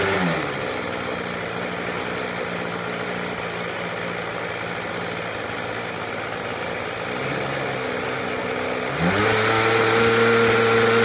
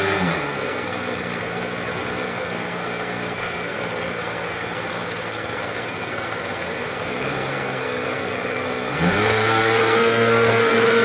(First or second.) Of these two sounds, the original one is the first